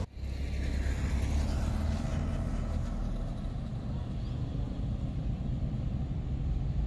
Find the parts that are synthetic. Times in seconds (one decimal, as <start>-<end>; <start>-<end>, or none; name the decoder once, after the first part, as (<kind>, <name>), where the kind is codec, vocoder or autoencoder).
none